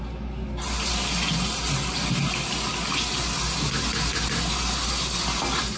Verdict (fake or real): real